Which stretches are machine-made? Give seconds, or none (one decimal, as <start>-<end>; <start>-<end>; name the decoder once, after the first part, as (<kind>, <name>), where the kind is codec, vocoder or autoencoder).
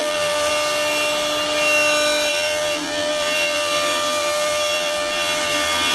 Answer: 0.0-0.5 (vocoder, BigVGAN v2); 2.3-5.9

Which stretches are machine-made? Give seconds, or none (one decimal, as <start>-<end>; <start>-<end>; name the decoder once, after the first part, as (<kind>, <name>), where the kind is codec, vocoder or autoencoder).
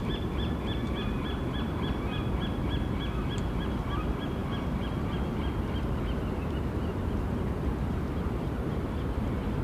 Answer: none